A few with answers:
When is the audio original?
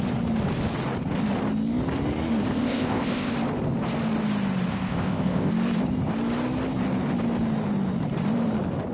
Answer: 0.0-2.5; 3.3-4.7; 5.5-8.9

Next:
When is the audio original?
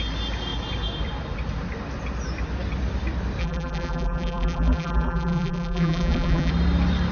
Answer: 0.0-3.4; 6.5-7.1